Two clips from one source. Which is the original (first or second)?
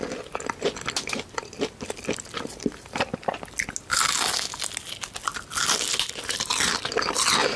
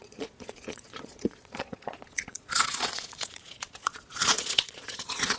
first